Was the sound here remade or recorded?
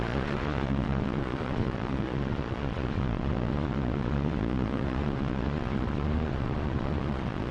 remade